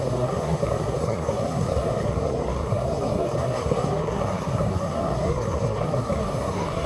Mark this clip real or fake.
fake